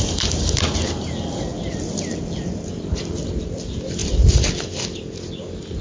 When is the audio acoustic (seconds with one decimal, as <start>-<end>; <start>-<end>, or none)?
0.0-1.5; 3.1-5.8